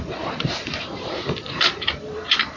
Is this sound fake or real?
fake